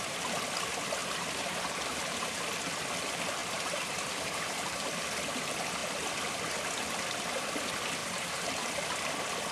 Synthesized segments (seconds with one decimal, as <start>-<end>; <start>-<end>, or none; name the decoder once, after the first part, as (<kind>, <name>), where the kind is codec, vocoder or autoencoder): 1.0-2.4 (vocoder, BigVGAN v2); 3.4-5.1; 8.0-8.7